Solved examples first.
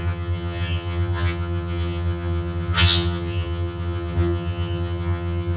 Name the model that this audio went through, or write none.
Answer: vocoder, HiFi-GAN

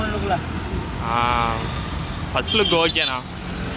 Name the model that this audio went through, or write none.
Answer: none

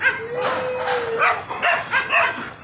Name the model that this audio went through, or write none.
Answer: none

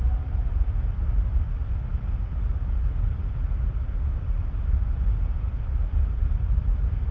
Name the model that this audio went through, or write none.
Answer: none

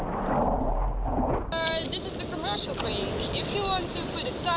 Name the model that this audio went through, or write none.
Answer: none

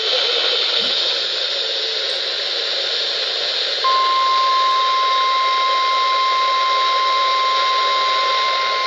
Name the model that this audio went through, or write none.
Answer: none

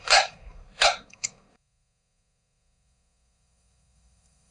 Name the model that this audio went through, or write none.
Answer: codec, SNAC